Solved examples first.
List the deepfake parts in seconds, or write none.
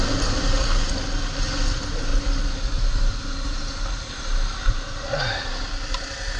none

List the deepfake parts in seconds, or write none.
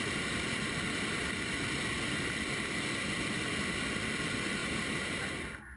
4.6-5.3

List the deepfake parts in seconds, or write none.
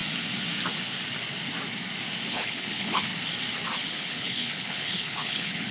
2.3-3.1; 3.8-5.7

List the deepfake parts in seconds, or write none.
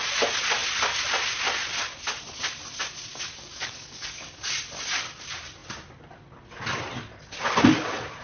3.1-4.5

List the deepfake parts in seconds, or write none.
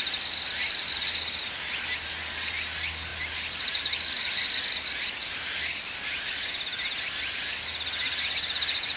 none